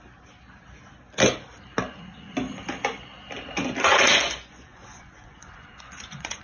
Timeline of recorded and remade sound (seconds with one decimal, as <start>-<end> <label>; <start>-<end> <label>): 0.0-3.9 recorded; 3.9-6.4 remade